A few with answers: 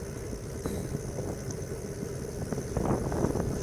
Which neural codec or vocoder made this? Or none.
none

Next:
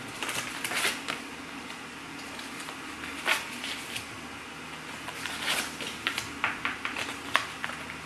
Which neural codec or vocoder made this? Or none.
none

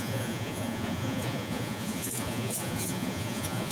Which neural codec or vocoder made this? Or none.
vocoder, Vocos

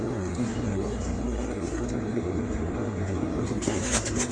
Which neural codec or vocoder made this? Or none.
codec, SNAC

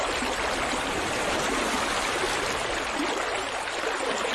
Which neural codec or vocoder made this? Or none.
none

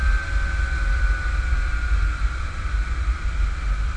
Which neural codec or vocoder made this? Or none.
none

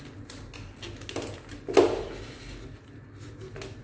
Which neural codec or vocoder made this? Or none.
none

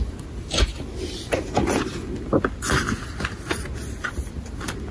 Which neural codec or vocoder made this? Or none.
none